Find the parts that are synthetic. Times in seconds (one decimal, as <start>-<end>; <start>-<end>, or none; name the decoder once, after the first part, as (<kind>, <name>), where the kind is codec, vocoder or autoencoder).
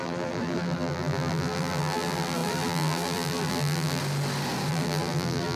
0.0-4.0 (vocoder, BigVGAN v2); 4.7-5.6